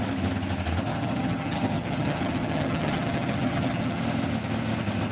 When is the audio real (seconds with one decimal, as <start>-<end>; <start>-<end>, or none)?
0.0-0.9; 4.0-5.1